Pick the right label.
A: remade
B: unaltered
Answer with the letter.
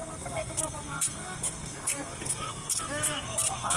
A